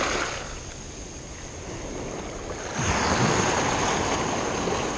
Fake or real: real